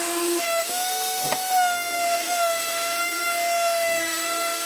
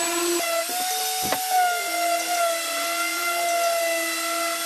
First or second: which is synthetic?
first